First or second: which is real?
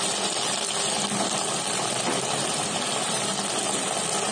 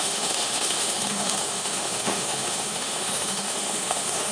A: first